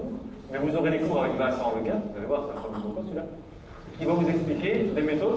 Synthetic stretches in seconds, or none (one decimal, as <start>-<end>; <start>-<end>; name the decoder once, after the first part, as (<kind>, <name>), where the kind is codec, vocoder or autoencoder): 1.0-4.0 (vocoder, Vocos)